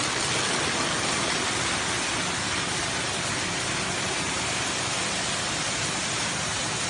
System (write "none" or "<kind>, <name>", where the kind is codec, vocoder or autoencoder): none